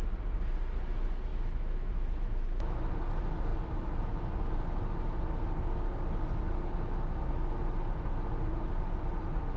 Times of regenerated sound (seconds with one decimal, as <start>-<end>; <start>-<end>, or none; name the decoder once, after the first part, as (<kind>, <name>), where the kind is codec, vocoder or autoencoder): 1.3-2.9 (autoencoder, DAC-VAE)